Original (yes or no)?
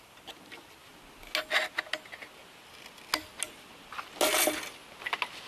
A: yes